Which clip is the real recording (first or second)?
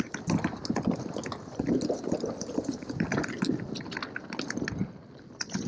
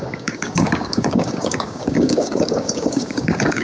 first